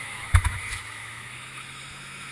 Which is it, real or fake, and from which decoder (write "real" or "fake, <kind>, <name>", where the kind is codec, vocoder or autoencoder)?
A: fake, autoencoder, DAC-VAE